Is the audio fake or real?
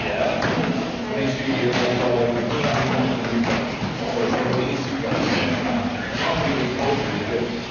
real